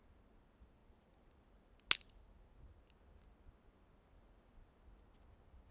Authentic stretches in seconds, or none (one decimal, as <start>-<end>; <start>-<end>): 0.0-5.7